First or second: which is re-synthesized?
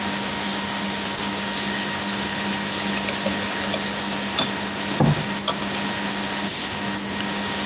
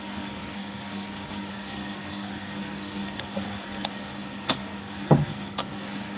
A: second